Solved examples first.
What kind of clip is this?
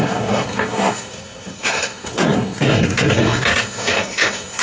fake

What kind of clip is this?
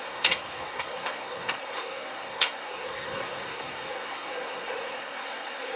fake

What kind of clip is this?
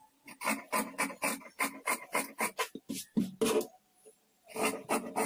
real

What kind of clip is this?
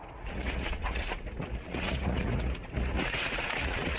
fake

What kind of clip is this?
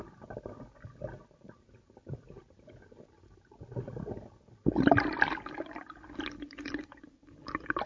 real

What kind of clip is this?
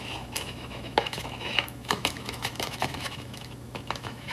fake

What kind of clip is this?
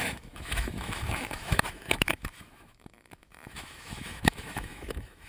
fake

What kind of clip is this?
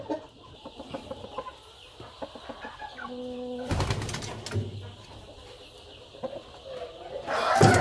real